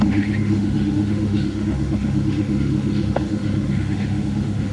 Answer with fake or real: fake